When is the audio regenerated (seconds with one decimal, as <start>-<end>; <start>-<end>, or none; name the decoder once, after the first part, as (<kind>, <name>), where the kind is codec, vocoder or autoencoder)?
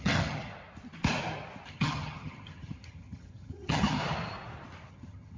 0.0-0.5 (vocoder, HiFi-GAN); 1.7-4.0; 4.9-5.4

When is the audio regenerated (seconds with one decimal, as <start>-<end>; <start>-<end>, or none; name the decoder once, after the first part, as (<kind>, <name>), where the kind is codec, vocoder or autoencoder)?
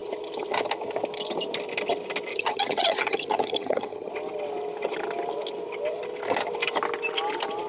2.3-4.1 (vocoder, HiFi-GAN)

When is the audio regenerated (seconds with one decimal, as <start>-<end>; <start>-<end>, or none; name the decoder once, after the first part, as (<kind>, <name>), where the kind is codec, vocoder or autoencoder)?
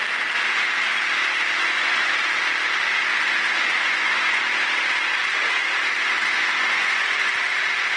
1.6-2.1 (vocoder, Vocos); 3.1-4.4; 6.2-7.3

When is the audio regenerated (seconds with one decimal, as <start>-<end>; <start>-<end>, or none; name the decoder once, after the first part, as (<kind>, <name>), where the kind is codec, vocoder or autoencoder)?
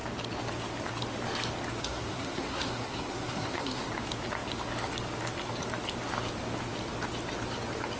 1.8-3.9 (codec, SNAC)